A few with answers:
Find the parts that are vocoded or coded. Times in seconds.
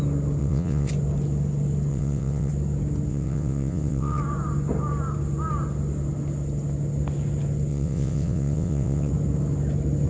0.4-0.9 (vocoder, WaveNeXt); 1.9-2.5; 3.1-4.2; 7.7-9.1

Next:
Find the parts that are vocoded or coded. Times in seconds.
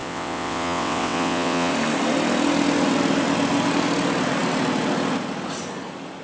0.0-1.7 (vocoder, WaveNeXt)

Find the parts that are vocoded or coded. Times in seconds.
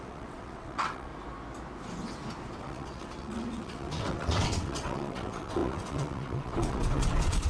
0.0-1.1 (vocoder, WaveNeXt); 2.6-7.5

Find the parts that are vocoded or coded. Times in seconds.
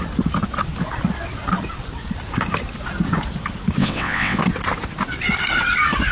3.8-4.4 (vocoder, WaveNeXt)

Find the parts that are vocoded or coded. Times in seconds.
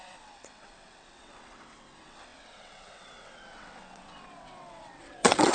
0.0-5.5 (vocoder, WaveNeXt)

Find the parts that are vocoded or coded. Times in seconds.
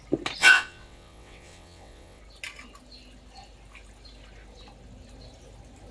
0.4-2.2 (vocoder, WaveNeXt)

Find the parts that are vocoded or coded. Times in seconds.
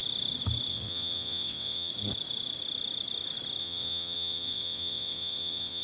0.7-1.9 (vocoder, WaveNeXt); 3.6-5.8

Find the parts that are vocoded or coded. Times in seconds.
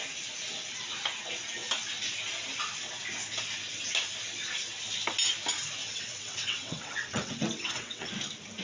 5.8-8.1 (vocoder, WaveNeXt)